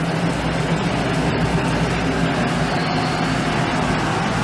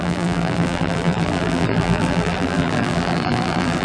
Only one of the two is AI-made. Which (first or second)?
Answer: second